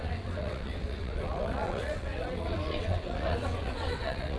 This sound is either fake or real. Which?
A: fake